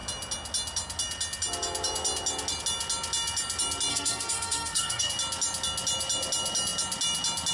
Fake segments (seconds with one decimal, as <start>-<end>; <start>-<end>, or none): 3.9-5.1